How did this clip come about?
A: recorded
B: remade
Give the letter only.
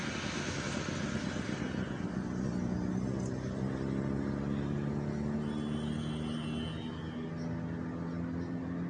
A